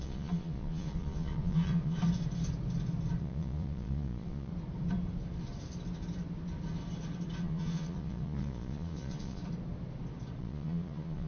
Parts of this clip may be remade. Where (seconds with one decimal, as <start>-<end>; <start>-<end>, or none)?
0.0-2.0; 3.2-4.5; 7.4-9.4; 10.4-11.3